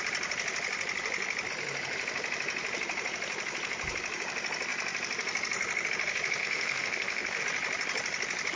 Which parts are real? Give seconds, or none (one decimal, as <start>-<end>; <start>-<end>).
0.0-6.4; 7.4-8.6